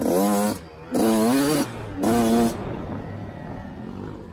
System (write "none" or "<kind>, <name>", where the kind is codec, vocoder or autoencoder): none